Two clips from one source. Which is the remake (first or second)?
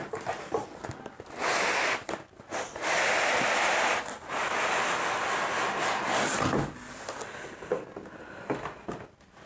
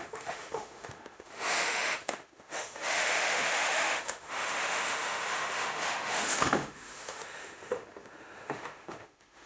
second